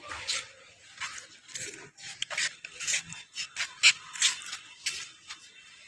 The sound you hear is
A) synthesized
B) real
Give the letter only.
B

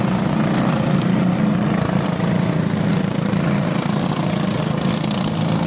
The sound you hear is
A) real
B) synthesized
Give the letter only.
A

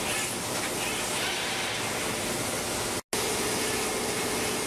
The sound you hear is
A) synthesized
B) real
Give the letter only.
B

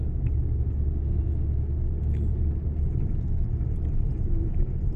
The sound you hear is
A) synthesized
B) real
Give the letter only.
B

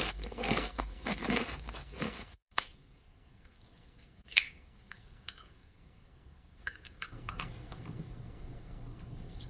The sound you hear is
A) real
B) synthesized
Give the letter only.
B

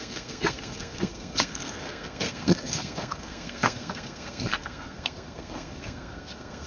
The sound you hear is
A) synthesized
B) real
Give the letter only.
A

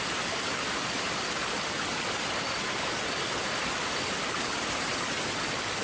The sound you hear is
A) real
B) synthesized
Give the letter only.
A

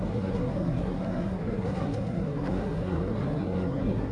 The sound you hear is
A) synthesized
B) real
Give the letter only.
A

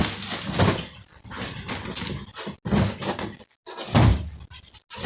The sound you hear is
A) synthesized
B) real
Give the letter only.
B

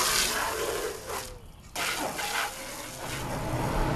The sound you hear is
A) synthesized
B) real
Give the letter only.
B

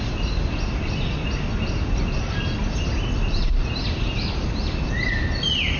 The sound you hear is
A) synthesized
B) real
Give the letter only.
B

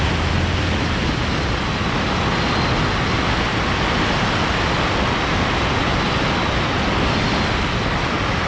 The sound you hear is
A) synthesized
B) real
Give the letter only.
B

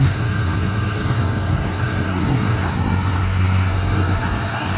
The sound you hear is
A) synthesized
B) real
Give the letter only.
A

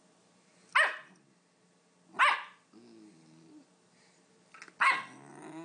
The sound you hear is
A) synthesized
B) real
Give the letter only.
B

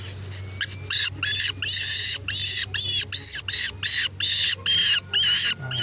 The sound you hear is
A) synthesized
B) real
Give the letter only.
B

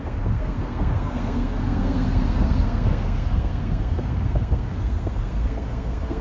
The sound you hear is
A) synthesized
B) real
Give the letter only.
A